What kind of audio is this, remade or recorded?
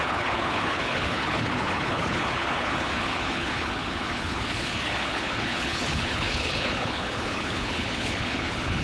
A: remade